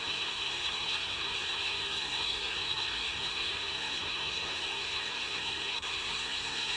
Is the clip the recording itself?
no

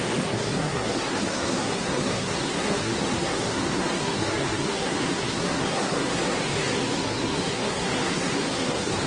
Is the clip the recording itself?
no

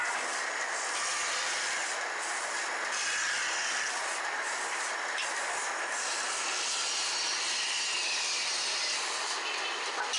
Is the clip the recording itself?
yes